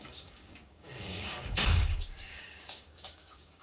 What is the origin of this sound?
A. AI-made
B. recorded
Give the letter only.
A